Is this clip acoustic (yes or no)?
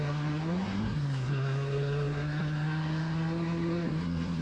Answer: no